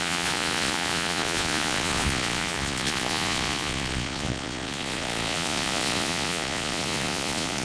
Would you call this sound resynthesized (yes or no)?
yes